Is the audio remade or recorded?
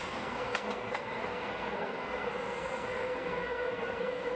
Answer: remade